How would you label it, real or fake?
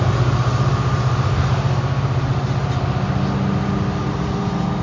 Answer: real